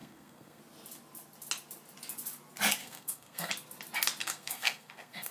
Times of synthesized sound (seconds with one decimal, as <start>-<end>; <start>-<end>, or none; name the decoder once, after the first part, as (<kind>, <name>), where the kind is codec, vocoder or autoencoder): 0.0-0.6 (codec, SNAC); 2.8-3.5; 4.2-5.3